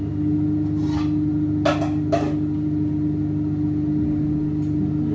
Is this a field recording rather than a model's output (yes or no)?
yes